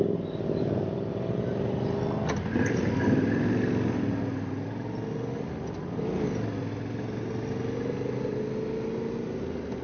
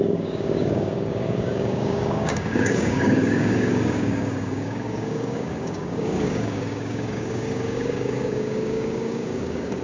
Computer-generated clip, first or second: second